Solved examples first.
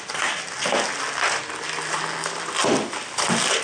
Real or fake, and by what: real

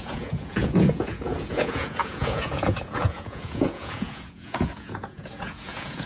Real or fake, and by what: fake, vocoder, Vocos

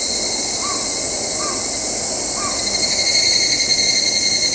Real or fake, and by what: real